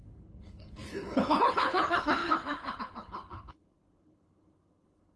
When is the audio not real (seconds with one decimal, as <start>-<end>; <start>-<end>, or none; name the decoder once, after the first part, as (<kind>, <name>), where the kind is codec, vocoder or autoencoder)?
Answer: 0.0-5.2 (codec, HILCodec)